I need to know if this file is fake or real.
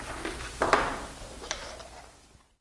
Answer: real